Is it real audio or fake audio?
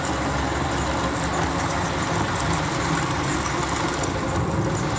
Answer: real